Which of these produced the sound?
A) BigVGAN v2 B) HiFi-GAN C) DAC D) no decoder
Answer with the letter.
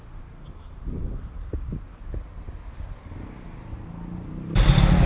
D